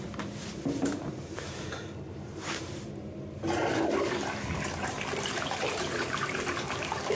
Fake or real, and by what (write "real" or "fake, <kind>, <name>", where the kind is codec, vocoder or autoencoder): fake, vocoder, BigVGAN v2